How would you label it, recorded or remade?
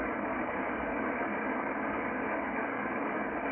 remade